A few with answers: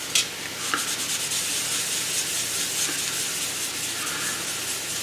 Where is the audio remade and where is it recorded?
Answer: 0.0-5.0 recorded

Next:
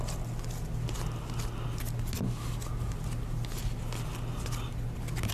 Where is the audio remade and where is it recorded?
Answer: 0.0-5.3 recorded

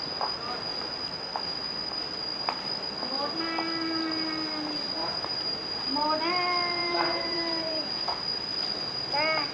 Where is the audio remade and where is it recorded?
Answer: 0.0-5.0 recorded; 5.0-5.8 remade; 5.8-6.8 recorded; 6.8-7.9 remade; 7.9-9.5 recorded